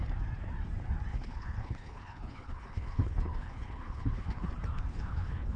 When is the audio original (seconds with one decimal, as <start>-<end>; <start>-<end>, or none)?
0.0-1.1; 4.5-4.9